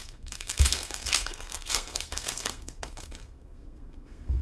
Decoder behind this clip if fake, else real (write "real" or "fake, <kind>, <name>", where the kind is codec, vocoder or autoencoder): fake, codec, SNAC